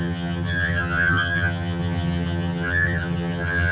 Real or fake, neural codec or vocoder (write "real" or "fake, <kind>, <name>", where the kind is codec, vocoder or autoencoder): fake, vocoder, HiFi-GAN